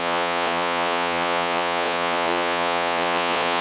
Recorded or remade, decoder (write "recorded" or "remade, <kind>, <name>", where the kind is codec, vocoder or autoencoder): remade, vocoder, Vocos